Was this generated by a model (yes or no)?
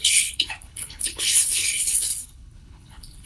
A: yes